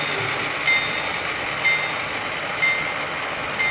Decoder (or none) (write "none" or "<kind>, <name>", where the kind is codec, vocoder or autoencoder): none